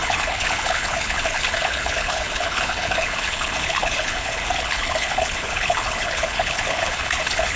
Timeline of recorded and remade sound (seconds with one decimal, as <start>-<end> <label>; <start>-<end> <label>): 0.0-7.6 remade